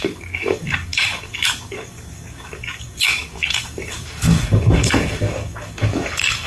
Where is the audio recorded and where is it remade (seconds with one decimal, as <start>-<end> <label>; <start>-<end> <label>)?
0.0-6.5 remade